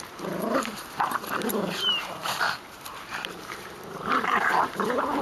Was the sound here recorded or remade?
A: remade